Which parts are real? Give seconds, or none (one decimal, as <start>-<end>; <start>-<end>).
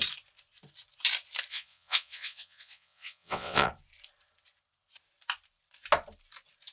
0.0-1.5; 3.7-6.7